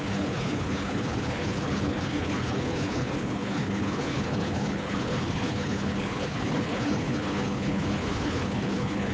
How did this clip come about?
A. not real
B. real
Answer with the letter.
A